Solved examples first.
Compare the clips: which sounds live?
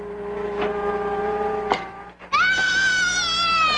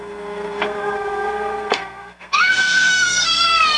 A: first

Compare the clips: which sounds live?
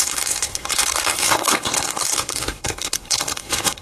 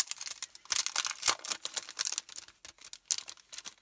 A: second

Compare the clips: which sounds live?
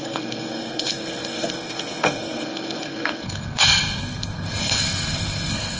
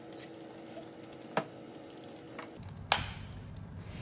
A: second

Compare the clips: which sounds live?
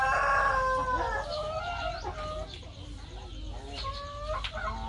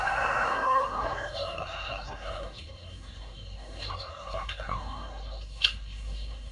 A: first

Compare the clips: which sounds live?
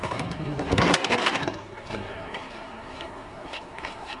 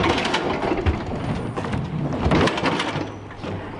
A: second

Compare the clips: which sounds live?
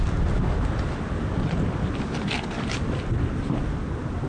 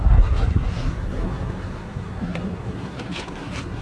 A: first